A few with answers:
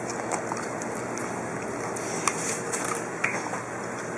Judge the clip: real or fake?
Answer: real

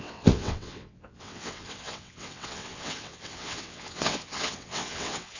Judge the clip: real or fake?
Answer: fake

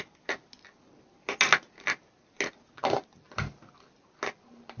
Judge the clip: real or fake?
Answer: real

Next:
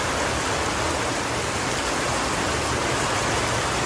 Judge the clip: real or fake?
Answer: real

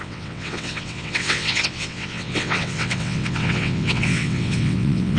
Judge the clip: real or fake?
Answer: fake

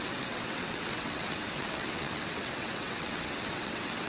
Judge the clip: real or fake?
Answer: fake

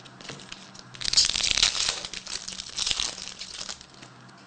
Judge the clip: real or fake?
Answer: real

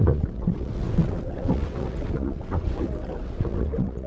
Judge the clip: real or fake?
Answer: fake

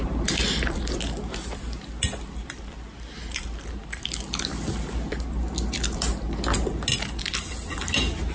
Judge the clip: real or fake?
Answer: real